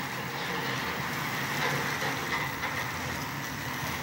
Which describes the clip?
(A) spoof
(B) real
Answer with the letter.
B